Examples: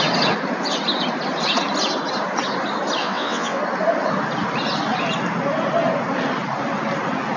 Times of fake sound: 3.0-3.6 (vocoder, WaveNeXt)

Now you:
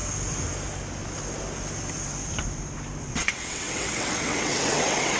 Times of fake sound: 3.1-5.2 (vocoder, WaveNeXt)

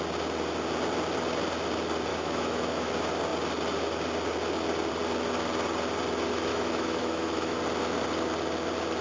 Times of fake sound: 2.1-2.9 (autoencoder, DAC-VAE); 6.5-7.6

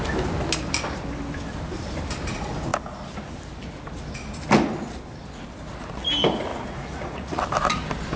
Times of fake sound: 6.5-7.4 (vocoder, Vocos)